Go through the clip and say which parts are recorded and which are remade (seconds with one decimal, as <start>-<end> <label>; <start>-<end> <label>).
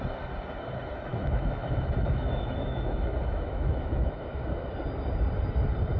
0.0-1.1 recorded; 1.1-4.7 remade; 4.7-6.0 recorded